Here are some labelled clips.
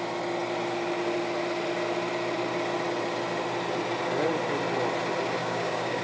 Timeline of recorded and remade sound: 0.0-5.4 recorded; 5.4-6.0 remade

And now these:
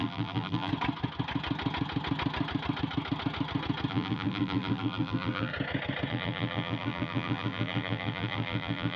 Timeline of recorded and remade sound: 0.0-0.7 remade; 0.7-3.9 recorded; 3.9-5.5 remade; 5.5-6.1 recorded; 6.1-9.0 remade

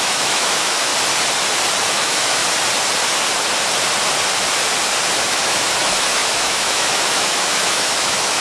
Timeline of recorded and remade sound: 0.0-0.9 remade; 0.9-1.9 recorded; 1.9-2.4 remade; 2.4-5.2 recorded; 5.2-8.4 remade

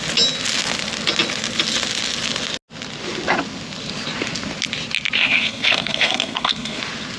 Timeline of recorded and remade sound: 0.0-5.2 recorded; 5.2-6.8 remade; 6.8-7.2 recorded

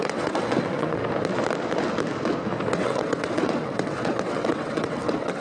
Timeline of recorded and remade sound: 0.0-1.0 remade; 1.0-2.7 recorded; 2.7-5.4 remade

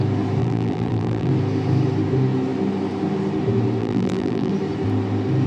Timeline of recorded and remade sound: 0.0-0.4 recorded; 0.4-1.3 remade; 1.3-3.8 recorded; 3.8-4.5 remade; 4.5-5.5 recorded